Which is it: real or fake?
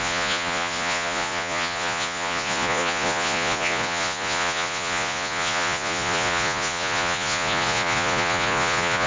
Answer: fake